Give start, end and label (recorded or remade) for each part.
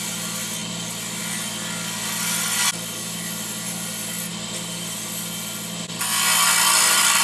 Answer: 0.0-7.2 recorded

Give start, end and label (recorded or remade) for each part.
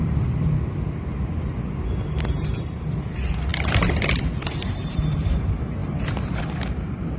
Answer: 0.0-7.2 remade